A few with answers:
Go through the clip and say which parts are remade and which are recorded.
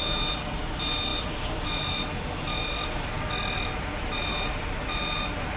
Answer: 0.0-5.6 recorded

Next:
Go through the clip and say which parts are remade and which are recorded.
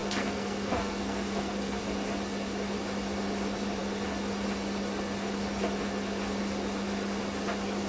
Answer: 0.0-1.8 remade; 1.8-7.9 recorded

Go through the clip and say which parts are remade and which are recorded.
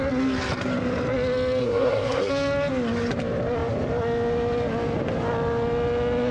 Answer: 0.0-1.6 recorded; 1.6-2.3 remade; 2.3-6.3 recorded